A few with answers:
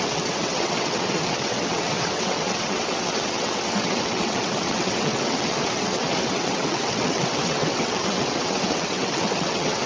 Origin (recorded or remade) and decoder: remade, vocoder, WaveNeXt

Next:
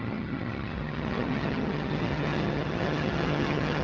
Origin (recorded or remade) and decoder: remade, vocoder, HiFi-GAN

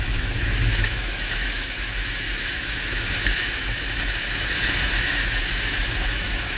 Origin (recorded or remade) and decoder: remade, autoencoder, DAC-VAE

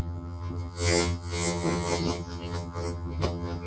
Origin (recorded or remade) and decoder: remade, vocoder, HiFi-GAN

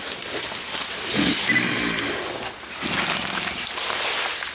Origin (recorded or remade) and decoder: recorded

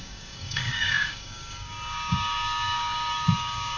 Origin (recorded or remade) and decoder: remade, codec, DAC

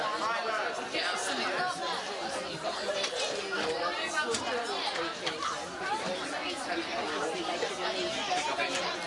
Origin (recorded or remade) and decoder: recorded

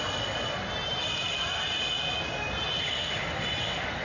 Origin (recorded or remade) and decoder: recorded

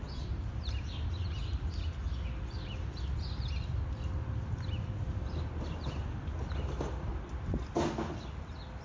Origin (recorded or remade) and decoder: recorded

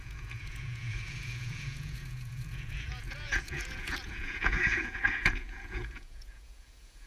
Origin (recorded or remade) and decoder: remade, vocoder, Vocos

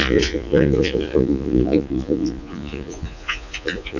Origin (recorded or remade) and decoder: remade, vocoder, Vocos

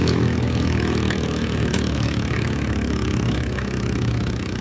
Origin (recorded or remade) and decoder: remade, autoencoder, DAC-VAE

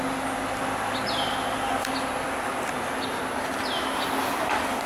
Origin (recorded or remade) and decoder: recorded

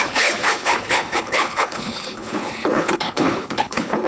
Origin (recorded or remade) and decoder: remade, codec, HILCodec